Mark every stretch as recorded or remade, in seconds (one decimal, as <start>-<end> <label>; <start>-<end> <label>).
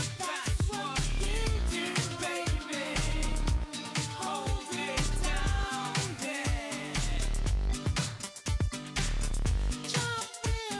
0.0-4.8 remade; 4.8-5.4 recorded; 5.4-7.7 remade; 7.7-9.3 recorded; 9.3-10.8 remade